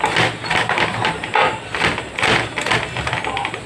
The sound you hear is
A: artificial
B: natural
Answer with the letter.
B